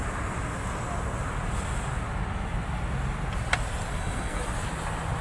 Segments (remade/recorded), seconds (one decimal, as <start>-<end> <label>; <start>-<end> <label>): 0.0-3.9 recorded; 3.9-4.4 remade; 4.4-5.2 recorded